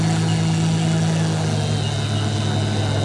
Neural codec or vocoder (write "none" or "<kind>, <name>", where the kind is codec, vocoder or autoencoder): none